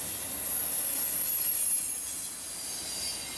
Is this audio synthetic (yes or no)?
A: no